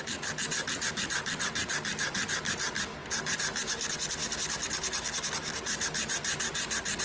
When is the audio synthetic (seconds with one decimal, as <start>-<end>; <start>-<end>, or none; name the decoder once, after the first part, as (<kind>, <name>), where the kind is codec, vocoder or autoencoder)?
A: none

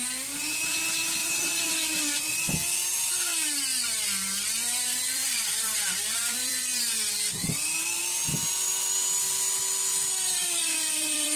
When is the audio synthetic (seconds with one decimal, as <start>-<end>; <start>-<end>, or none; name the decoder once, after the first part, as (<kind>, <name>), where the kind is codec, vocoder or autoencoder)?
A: 1.2-2.5 (vocoder, BigVGAN v2); 3.7-8.0; 9.9-11.4

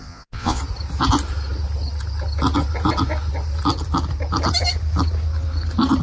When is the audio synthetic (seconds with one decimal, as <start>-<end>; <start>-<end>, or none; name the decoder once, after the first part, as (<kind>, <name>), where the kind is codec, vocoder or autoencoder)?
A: 0.0-0.6 (vocoder, Vocos)

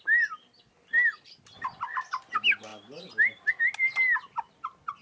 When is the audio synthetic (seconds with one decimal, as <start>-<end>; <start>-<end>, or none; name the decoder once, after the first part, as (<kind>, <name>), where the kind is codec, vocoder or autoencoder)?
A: none

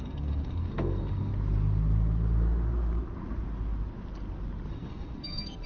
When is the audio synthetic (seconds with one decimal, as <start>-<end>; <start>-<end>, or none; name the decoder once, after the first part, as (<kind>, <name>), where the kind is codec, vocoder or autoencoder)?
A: 0.0-1.3 (codec, SNAC); 4.7-5.7

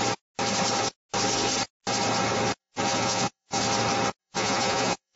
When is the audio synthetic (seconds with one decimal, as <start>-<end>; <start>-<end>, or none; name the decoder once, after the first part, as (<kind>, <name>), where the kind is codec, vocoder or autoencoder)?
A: 2.6-3.6 (vocoder, Vocos); 4.2-5.2

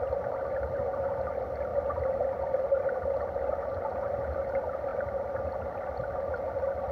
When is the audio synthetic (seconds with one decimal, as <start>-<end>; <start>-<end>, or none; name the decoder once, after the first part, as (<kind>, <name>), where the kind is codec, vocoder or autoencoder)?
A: none